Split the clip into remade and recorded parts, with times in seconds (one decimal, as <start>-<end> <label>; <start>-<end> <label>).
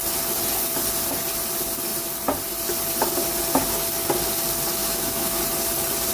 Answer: 0.0-4.8 recorded; 4.8-5.4 remade; 5.4-6.1 recorded